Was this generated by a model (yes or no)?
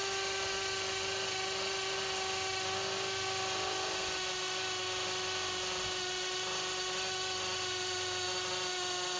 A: no